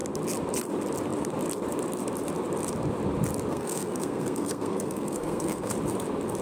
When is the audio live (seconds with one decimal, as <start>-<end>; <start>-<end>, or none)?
0.0-3.5; 5.7-6.4